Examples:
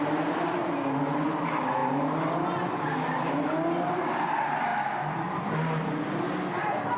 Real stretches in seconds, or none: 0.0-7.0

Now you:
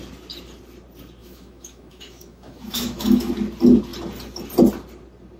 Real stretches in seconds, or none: 0.0-1.2; 3.3-5.4

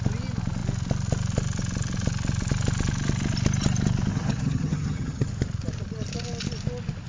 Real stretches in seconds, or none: 0.0-4.1; 5.3-7.1

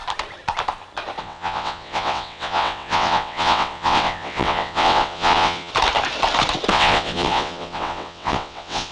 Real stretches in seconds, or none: 0.0-1.2; 5.7-6.7

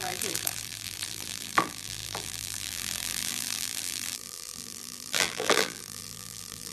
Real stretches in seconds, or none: none

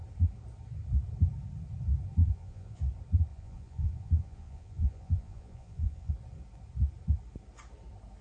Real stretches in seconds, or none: 0.0-2.2; 2.8-3.3; 6.1-8.2